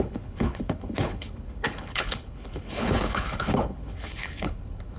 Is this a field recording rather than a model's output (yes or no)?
no